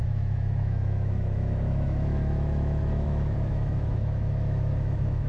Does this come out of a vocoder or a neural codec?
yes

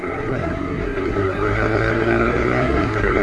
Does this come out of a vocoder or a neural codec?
yes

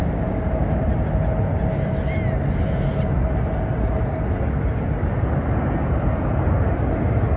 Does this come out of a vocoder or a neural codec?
no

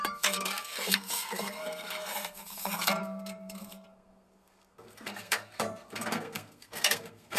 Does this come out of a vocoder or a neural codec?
yes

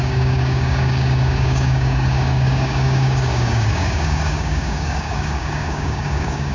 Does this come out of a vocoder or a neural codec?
yes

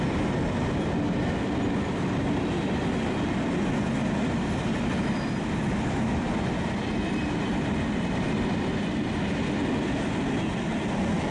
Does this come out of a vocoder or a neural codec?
no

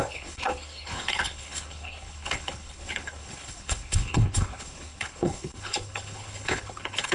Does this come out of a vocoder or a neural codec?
yes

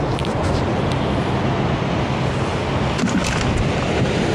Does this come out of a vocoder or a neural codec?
no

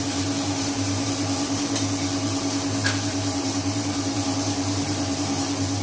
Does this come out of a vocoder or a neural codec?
yes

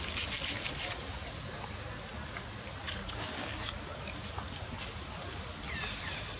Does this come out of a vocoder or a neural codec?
no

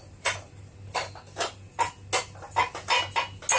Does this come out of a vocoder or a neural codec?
no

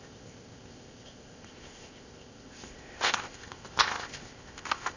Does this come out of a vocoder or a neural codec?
yes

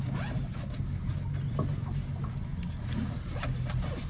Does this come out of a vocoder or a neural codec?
no